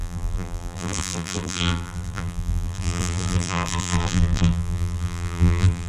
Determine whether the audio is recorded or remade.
remade